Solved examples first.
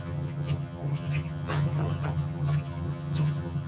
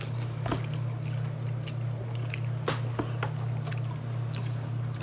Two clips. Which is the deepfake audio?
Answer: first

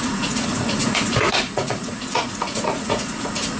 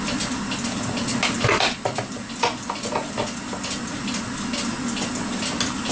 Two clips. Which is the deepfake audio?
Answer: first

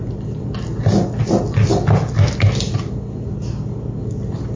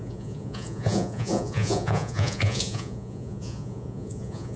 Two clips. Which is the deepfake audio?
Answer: second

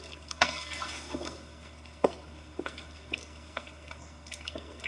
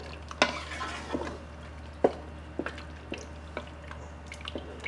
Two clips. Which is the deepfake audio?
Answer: first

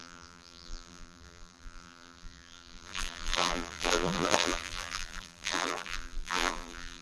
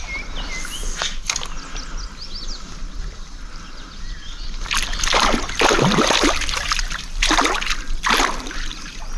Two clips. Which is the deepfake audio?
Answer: first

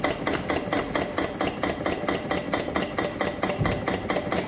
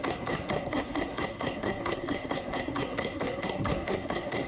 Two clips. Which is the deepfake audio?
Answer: second